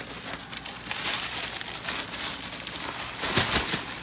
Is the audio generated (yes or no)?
no